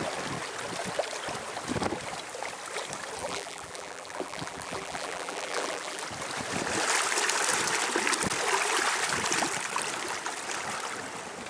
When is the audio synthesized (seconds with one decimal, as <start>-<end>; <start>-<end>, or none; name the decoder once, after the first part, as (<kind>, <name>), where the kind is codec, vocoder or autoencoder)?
3.2-6.0 (vocoder, BigVGAN v2)